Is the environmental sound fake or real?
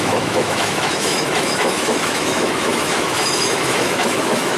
fake